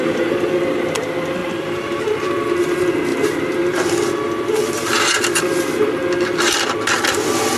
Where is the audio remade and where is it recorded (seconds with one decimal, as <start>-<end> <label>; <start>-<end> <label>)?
0.0-1.4 recorded; 1.4-2.3 remade; 2.3-7.6 recorded